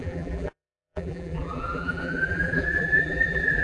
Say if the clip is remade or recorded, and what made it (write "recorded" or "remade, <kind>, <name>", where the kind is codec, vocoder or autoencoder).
remade, vocoder, BigVGAN v2